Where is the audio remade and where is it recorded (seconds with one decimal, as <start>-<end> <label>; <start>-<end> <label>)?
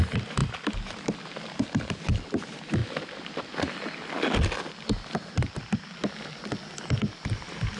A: 0.0-7.8 recorded